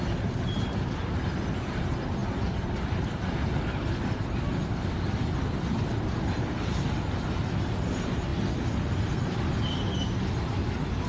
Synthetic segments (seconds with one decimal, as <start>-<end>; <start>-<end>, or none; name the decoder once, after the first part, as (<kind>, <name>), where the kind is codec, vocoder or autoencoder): none